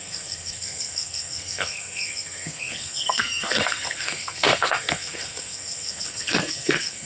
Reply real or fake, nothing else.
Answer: fake